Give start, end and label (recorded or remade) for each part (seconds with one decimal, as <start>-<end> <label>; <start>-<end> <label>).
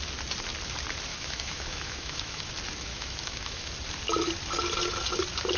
0.0-1.1 recorded; 1.1-2.5 remade; 2.5-2.9 recorded; 2.9-3.7 remade; 3.7-5.6 recorded